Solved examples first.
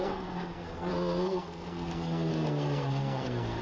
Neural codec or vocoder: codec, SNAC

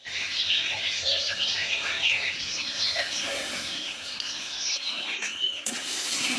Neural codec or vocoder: codec, SNAC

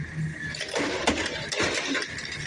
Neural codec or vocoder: none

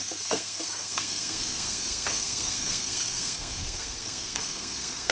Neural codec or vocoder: codec, SNAC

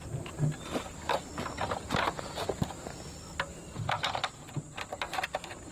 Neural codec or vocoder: none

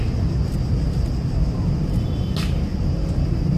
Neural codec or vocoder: none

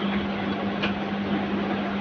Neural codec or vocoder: none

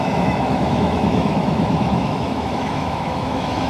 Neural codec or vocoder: autoencoder, DAC-VAE